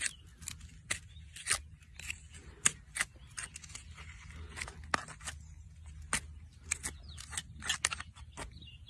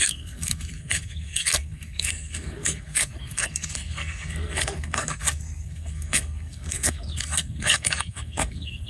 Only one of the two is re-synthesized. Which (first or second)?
second